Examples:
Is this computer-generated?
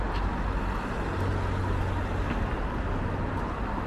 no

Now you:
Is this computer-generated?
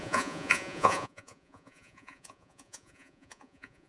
yes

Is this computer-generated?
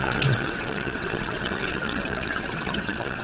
yes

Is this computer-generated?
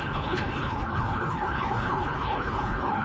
yes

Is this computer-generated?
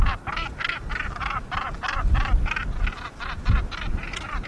no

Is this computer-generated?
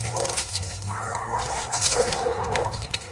yes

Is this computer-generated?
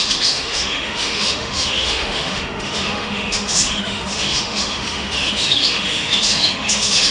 yes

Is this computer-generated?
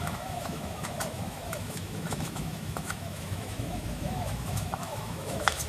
yes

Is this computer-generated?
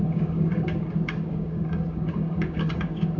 yes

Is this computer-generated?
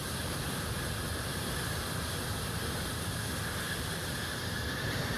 no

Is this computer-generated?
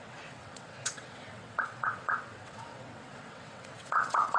yes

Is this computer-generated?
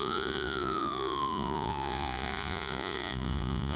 yes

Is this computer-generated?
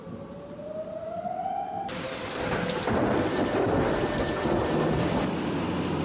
no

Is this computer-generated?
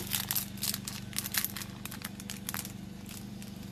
no